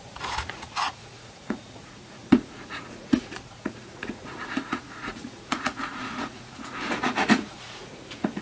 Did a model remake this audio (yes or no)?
yes